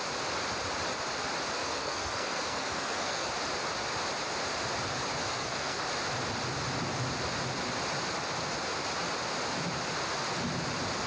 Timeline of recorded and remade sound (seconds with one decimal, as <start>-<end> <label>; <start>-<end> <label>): 0.0-1.6 recorded; 1.6-3.3 remade; 3.3-5.2 recorded; 5.2-5.8 remade; 5.8-11.1 recorded